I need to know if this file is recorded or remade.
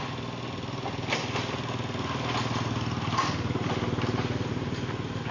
recorded